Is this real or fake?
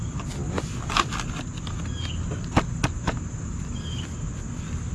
real